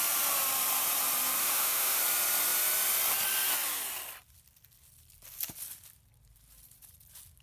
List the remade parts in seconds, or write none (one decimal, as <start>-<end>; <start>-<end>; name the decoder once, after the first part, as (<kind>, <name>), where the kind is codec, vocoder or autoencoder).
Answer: 1.4-2.0 (autoencoder, DAC-VAE)